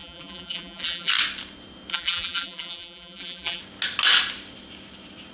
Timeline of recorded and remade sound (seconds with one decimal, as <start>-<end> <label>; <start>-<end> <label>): 0.0-1.1 remade; 1.1-1.9 recorded; 1.9-3.6 remade; 3.6-5.3 recorded

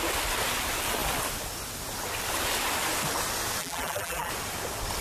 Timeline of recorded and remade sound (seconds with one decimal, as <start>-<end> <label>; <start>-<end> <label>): 0.0-3.6 recorded; 3.6-4.3 remade; 4.3-5.0 recorded

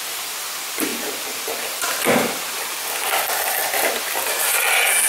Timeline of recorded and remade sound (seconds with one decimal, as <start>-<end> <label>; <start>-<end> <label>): 0.0-5.1 recorded